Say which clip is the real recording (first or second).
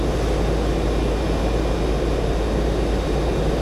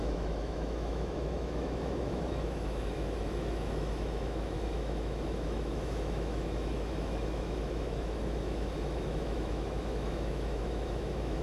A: first